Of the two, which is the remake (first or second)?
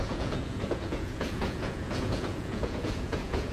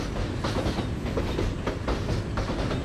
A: first